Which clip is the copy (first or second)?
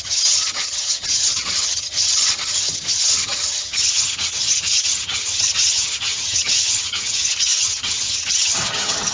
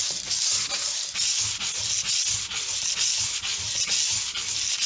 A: first